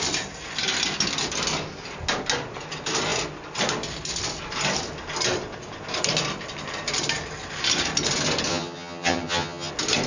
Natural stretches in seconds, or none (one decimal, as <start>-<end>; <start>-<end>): 0.0-8.5; 9.7-10.1